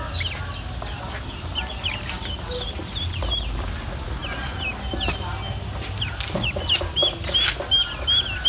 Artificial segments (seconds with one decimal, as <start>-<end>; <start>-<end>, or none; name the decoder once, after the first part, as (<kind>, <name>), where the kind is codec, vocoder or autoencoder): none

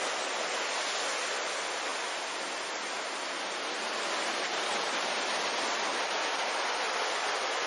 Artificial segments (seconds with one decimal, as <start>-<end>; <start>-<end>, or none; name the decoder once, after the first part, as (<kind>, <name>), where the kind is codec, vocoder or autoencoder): none

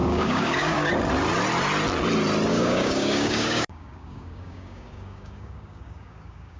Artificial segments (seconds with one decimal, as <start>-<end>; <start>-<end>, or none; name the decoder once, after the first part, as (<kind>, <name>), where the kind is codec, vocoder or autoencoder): 0.0-0.9 (codec, DAC); 2.5-6.6

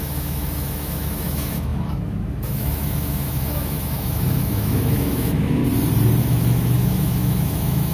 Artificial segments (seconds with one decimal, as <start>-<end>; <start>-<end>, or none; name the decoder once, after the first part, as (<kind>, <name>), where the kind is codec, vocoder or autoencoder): 0.0-5.6 (autoencoder, DAC-VAE); 6.2-7.9

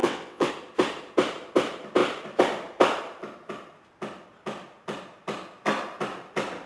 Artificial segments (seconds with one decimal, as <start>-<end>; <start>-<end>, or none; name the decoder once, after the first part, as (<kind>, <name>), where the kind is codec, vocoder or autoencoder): 0.0-0.5 (vocoder, WaveNeXt)

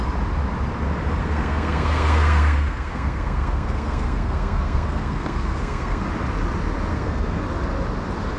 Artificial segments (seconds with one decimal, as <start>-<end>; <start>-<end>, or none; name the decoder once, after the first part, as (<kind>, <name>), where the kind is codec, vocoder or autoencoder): 1.2-6.1 (codec, SNAC); 6.9-7.4